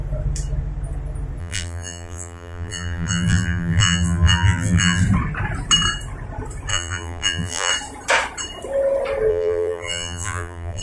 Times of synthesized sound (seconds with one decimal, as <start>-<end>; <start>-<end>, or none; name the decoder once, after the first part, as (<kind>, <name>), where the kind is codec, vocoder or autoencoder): 1.4-5.0 (vocoder, BigVGAN v2); 6.7-7.7; 9.3-10.8